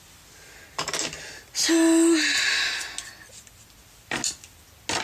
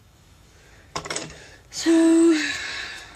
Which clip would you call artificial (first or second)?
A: second